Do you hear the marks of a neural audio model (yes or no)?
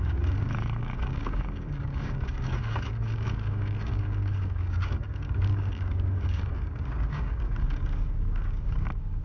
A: yes